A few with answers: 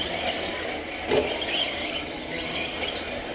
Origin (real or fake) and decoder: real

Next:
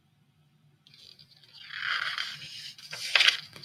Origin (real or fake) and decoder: real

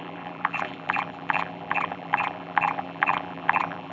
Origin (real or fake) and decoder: fake, vocoder, BigVGAN v2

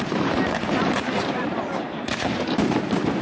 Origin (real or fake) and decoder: fake, vocoder, BigVGAN v2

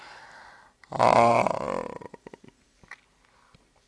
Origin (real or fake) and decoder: real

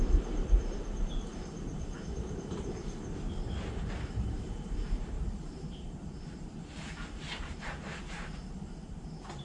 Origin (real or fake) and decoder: fake, vocoder, BigVGAN v2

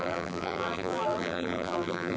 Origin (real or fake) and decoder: fake, vocoder, BigVGAN v2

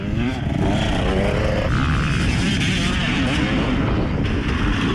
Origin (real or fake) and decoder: fake, vocoder, BigVGAN v2